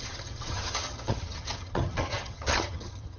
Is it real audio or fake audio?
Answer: fake